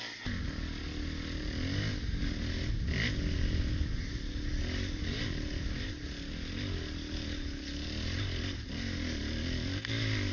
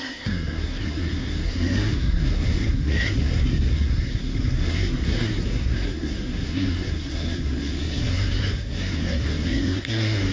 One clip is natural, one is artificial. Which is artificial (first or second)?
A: second